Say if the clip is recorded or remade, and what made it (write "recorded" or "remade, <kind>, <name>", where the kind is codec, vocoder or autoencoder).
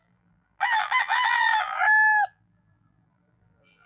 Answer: remade, vocoder, BigVGAN v2